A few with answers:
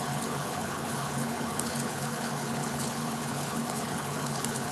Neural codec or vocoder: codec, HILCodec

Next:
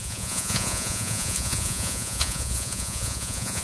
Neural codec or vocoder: vocoder, Vocos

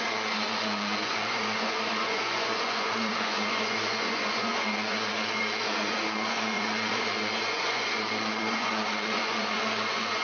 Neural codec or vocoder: vocoder, Vocos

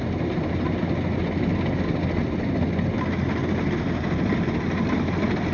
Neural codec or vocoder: none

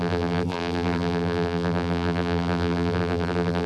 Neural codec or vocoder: vocoder, BigVGAN v2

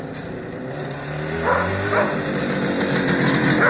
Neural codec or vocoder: none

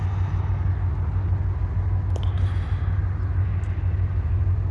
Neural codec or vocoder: none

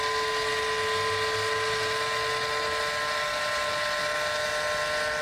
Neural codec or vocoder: none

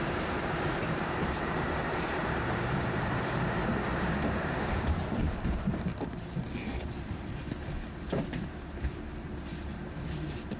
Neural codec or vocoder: vocoder, BigVGAN v2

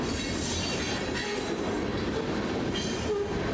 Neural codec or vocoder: none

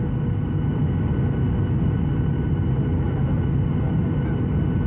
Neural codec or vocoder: none